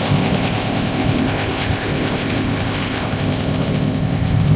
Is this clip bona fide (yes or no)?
no